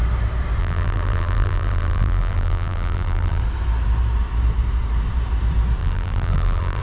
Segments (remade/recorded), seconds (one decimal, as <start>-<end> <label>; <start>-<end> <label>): 0.0-0.6 recorded; 0.6-3.4 remade; 3.4-5.8 recorded; 5.8-6.8 remade